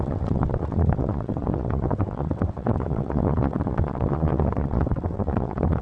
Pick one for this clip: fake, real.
fake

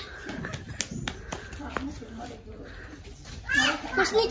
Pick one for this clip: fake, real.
real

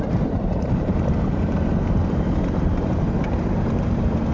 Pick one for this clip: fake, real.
fake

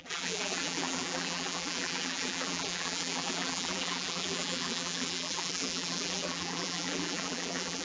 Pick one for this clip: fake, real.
fake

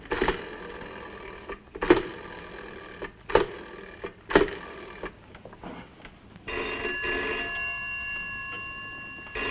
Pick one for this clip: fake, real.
real